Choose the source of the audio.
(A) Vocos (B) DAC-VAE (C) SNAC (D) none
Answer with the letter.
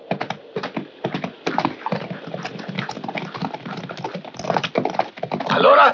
D